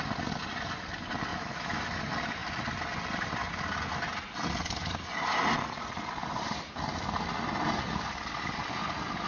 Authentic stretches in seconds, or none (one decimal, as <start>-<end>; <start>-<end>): 0.0-1.3; 1.8-9.3